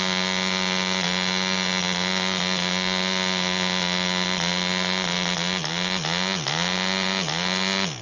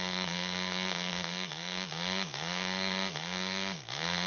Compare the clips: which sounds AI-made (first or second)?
second